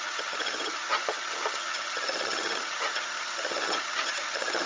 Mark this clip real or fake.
fake